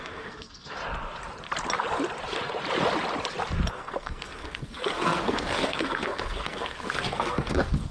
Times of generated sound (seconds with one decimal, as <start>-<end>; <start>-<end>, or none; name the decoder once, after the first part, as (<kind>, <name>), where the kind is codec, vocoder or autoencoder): 0.0-0.8 (codec, SNAC); 3.7-7.9